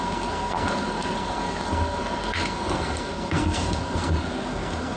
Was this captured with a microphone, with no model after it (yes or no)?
no